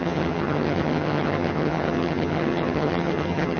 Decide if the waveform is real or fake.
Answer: fake